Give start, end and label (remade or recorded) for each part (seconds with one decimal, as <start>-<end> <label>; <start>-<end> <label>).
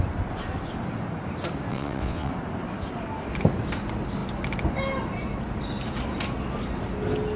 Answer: 0.0-1.7 recorded; 1.7-2.3 remade; 2.3-7.4 recorded